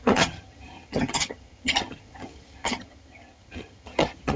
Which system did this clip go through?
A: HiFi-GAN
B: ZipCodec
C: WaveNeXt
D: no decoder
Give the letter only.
A